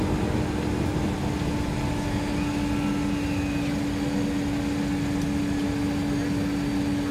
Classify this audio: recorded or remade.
recorded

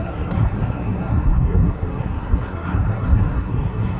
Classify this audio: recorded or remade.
remade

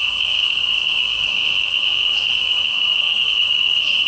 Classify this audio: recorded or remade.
remade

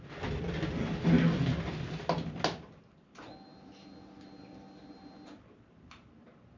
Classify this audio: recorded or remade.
recorded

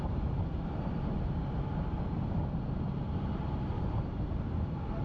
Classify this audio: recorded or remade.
recorded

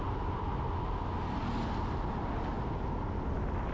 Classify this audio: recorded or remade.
recorded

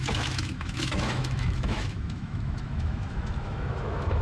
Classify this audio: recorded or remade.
remade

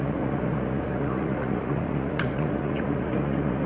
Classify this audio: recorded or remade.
remade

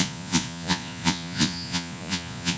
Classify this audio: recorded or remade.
remade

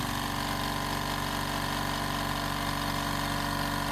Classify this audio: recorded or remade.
recorded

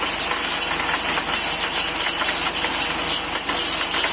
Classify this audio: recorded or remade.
recorded